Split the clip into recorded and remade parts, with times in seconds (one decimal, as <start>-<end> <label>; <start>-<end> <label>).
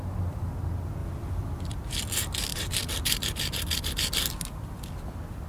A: 0.0-1.0 recorded; 1.0-2.0 remade; 2.0-2.5 recorded; 2.5-4.9 remade; 4.9-5.5 recorded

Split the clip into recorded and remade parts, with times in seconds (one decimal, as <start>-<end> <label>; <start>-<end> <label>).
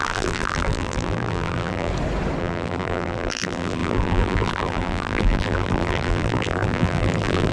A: 0.0-1.9 remade; 1.9-2.4 recorded; 2.4-7.5 remade